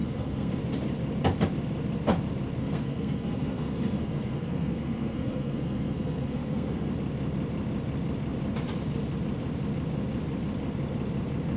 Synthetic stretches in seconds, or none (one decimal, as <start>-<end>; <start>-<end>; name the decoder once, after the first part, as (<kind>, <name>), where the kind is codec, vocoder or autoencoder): 0.0-0.6 (codec, SNAC); 2.6-6.9